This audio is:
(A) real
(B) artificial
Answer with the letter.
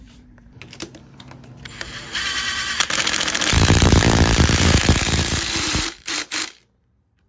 B